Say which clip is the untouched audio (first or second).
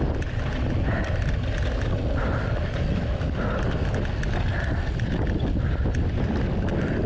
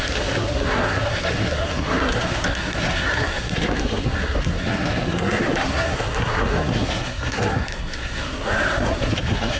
first